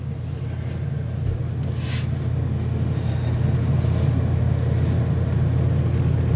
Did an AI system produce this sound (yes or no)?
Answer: no